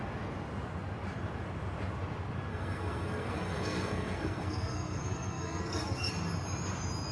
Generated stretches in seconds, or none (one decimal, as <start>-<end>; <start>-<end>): 2.5-6.1